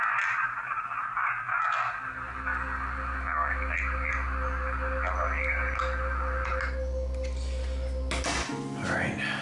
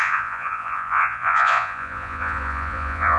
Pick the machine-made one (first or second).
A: second